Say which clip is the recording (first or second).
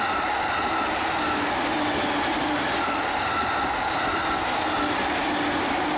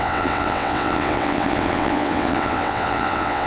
first